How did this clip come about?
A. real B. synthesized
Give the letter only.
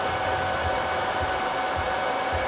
A